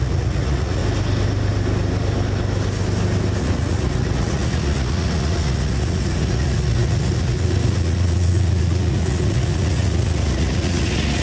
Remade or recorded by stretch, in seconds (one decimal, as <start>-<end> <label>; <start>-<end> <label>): 0.0-0.8 remade; 0.8-3.4 recorded; 3.4-11.2 remade